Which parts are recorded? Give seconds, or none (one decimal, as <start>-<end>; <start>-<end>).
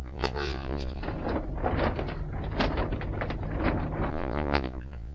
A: 1.0-4.1